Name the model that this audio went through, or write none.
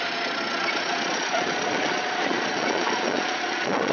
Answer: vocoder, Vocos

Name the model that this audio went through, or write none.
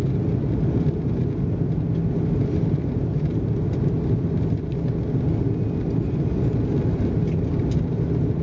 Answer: none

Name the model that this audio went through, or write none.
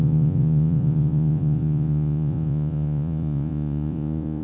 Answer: vocoder, Vocos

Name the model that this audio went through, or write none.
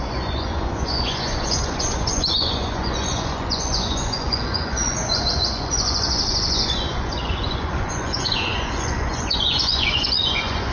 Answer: vocoder, Vocos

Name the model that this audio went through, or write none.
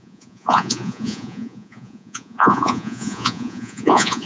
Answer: vocoder, Vocos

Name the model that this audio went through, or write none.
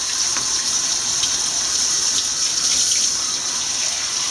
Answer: none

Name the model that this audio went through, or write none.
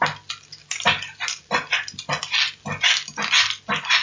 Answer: none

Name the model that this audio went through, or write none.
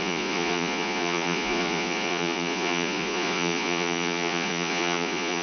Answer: vocoder, Vocos